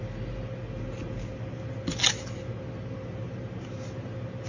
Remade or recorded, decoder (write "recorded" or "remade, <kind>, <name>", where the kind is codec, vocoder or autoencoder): recorded